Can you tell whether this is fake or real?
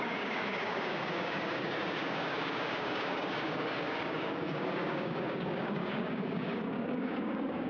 fake